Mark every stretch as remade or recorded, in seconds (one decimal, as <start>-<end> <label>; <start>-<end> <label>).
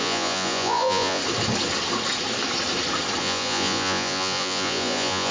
0.0-1.2 remade; 1.2-3.2 recorded; 3.2-5.3 remade